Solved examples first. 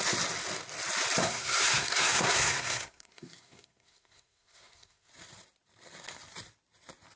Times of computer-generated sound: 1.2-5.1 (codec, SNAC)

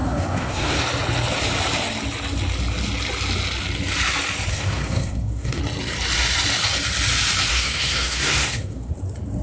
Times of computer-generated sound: 0.0-0.8 (codec, SNAC); 4.5-5.6; 7.5-8.9